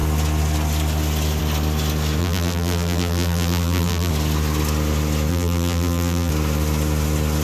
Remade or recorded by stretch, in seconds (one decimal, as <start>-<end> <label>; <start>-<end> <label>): 0.0-2.2 recorded; 2.2-4.1 remade; 4.1-5.3 recorded; 5.3-6.3 remade; 6.3-7.4 recorded